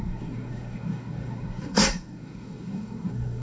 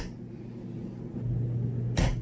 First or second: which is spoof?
first